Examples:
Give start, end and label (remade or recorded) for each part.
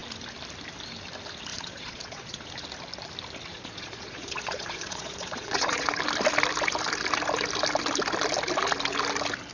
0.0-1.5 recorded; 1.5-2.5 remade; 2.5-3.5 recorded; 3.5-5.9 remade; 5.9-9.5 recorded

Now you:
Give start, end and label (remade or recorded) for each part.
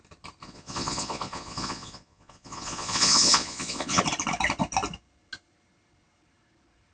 0.0-0.4 recorded; 0.4-4.0 remade; 4.0-6.9 recorded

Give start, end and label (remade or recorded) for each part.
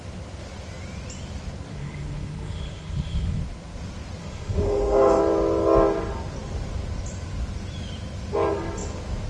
0.0-1.7 recorded; 1.7-3.4 remade; 3.4-4.2 recorded; 4.2-5.2 remade; 5.2-9.3 recorded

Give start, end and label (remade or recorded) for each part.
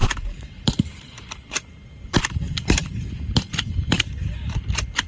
0.0-3.1 remade; 3.1-5.1 recorded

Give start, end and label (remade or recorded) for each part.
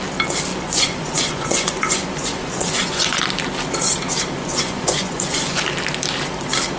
0.0-0.5 recorded; 0.5-3.2 remade; 3.2-4.4 recorded; 4.4-5.6 remade; 5.6-6.8 recorded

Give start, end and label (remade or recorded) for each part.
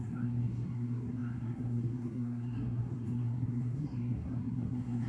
0.0-5.1 remade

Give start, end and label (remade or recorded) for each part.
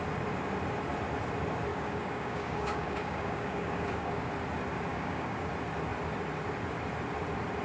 0.0-1.7 recorded; 1.7-4.3 remade; 4.3-4.9 recorded; 4.9-5.5 remade; 5.5-7.6 recorded